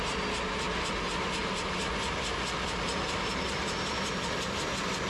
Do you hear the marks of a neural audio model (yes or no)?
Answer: no